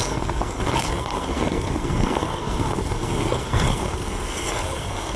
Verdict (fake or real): fake